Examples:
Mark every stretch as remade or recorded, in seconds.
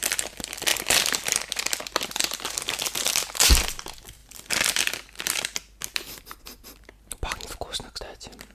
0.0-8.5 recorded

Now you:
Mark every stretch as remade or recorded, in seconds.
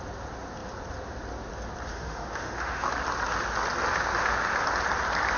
0.0-1.9 recorded; 1.9-2.9 remade; 2.9-5.4 recorded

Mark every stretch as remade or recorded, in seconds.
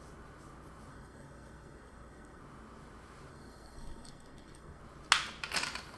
0.0-0.9 recorded; 0.9-2.4 remade; 2.4-3.3 recorded; 3.3-4.8 remade; 4.8-6.0 recorded